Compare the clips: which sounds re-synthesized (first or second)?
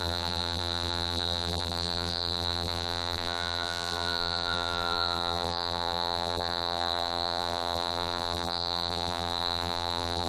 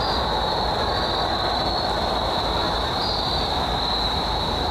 first